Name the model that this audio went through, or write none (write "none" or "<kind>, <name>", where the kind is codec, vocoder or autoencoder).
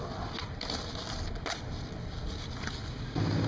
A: none